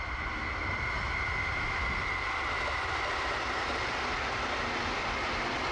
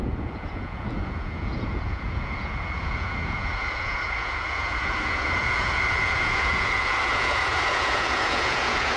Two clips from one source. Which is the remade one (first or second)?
second